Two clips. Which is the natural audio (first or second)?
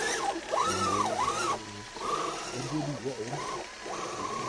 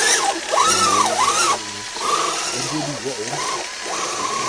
second